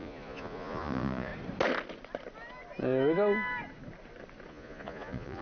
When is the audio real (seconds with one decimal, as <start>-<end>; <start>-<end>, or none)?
1.3-4.5

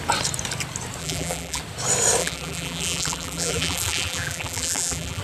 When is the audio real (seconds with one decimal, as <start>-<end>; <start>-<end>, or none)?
0.0-1.0; 1.6-2.2

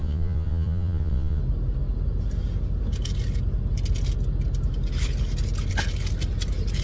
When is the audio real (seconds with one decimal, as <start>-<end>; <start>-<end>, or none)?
1.4-6.8

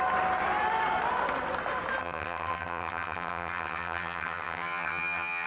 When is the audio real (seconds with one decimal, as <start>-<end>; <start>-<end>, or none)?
0.0-2.0